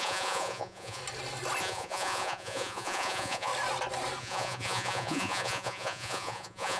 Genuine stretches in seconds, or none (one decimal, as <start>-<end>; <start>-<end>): 1.0-1.6; 3.5-4.2